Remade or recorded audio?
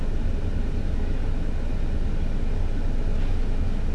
recorded